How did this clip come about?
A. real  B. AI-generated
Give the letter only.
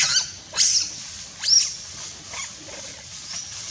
A